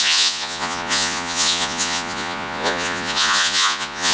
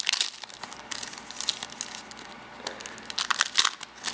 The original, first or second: second